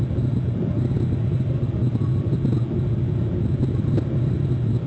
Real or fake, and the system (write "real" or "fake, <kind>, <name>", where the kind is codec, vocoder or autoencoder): real